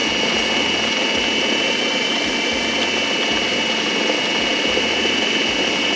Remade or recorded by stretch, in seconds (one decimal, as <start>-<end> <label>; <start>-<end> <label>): 0.0-6.0 recorded